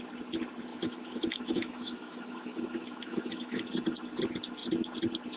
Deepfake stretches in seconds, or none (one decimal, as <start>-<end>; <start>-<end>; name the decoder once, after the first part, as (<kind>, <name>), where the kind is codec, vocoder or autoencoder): 0.7-3.7 (autoencoder, DAC-VAE)